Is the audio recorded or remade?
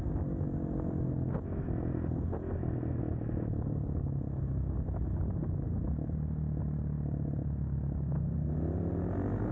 recorded